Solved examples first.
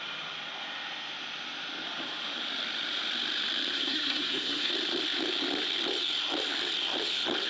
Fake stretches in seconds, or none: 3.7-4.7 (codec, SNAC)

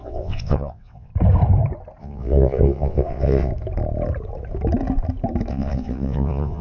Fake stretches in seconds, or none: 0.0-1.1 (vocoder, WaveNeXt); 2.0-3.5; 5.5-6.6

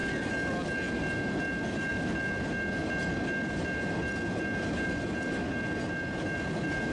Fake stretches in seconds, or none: none

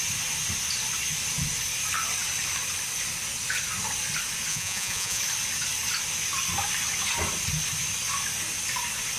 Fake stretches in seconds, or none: 4.5-5.2 (vocoder, Vocos)

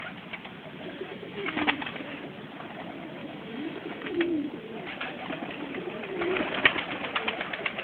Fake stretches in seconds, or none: 1.1-2.0 (autoencoder, DAC-VAE); 3.2-4.5

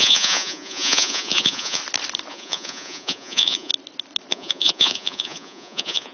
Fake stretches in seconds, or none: 0.0-1.8 (vocoder, Vocos); 2.3-3.7; 4.3-6.1

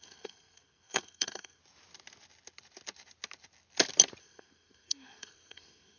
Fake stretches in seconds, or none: 0.0-1.6 (codec, SNAC); 4.2-6.0